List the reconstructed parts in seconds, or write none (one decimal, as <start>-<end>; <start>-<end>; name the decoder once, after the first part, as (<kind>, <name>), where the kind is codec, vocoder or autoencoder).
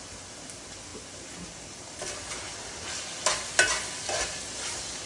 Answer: none